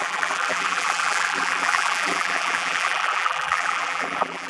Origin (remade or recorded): remade